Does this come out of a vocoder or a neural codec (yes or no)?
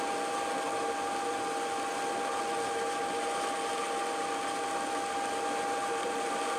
no